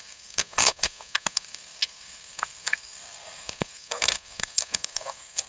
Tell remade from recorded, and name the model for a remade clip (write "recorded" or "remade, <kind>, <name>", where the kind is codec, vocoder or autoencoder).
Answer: remade, codec, SNAC